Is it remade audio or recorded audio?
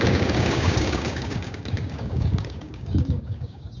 remade